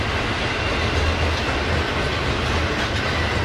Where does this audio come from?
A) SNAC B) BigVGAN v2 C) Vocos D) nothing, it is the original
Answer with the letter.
D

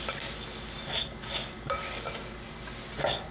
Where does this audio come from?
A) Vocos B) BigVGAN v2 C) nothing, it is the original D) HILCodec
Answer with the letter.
C